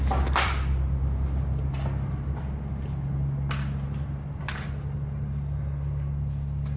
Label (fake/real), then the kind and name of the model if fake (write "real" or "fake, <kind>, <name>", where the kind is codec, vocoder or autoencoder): real